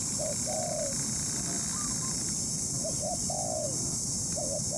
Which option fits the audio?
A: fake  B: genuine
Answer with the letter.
B